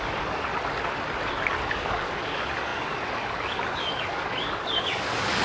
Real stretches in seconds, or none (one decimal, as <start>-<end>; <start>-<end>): 0.5-1.7